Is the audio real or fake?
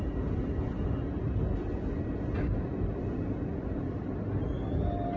real